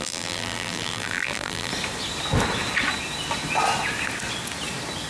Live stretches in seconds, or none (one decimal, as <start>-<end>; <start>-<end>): 1.7-5.1